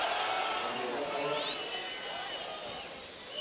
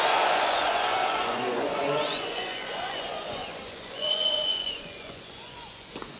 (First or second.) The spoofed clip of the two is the second